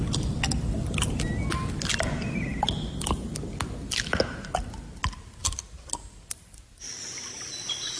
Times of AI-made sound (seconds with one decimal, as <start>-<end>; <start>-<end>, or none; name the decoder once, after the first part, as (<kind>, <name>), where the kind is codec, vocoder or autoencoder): none